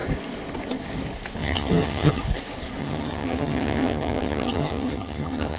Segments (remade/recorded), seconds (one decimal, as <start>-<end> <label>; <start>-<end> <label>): 0.0-1.4 recorded; 1.4-2.2 remade; 2.2-2.8 recorded; 2.8-5.6 remade